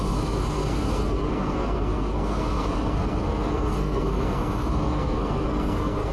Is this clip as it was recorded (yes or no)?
no